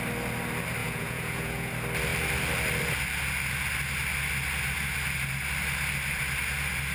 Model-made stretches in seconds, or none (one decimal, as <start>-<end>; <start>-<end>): 0.8-1.7